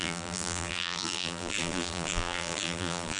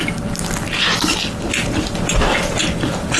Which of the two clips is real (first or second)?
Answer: second